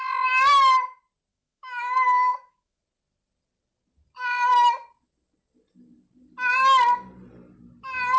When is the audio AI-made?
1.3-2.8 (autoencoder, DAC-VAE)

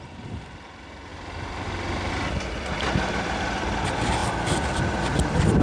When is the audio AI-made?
none